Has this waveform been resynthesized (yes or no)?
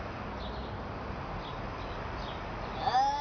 no